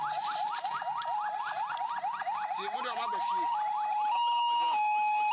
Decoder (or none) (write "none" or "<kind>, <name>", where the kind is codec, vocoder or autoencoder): none